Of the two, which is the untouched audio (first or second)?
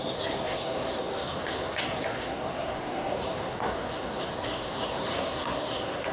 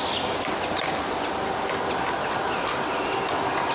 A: second